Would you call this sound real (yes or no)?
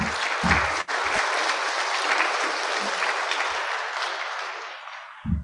yes